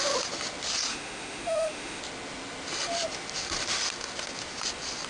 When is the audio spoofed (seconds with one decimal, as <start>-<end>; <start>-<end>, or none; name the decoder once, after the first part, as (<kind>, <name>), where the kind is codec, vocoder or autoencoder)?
0.9-2.0 (autoencoder, DAC-VAE)